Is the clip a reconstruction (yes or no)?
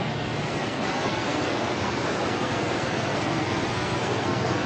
yes